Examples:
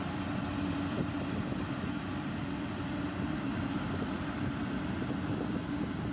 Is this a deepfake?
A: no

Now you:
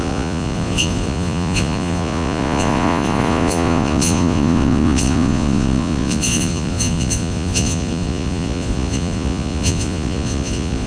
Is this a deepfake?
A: yes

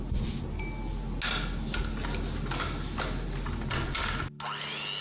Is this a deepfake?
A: no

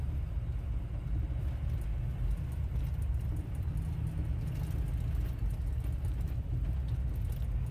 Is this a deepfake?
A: no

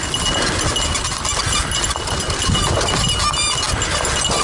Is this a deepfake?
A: no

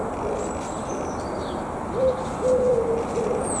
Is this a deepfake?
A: no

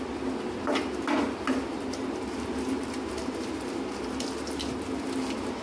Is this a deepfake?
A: no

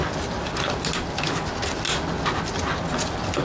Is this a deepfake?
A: no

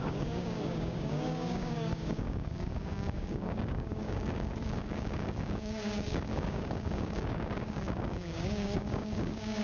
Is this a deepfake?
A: yes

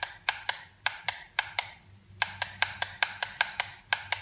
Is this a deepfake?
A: no